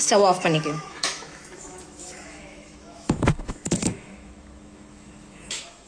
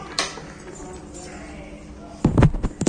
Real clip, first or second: second